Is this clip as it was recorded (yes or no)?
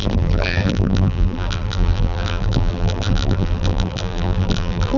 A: no